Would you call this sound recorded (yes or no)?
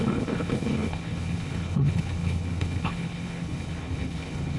no